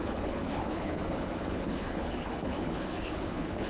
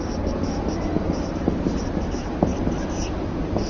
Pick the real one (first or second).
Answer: second